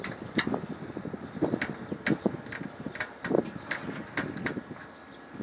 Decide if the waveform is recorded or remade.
recorded